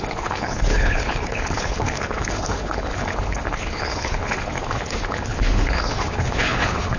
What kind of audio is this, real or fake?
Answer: fake